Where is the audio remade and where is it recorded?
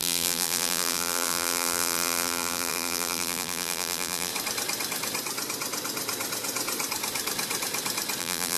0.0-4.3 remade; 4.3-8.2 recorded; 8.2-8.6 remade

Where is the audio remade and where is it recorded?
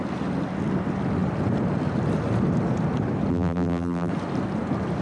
0.0-3.3 recorded; 3.3-4.1 remade; 4.1-5.0 recorded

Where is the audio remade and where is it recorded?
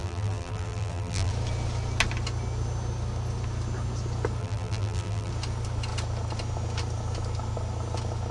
0.0-1.3 remade; 1.3-4.4 recorded; 4.4-5.3 remade; 5.3-8.3 recorded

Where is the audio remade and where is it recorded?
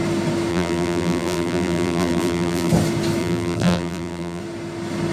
0.0-0.5 recorded; 0.5-2.7 remade; 2.7-3.2 recorded; 3.2-4.4 remade; 4.4-5.1 recorded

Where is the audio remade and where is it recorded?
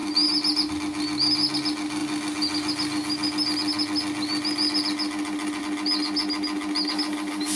0.0-7.6 recorded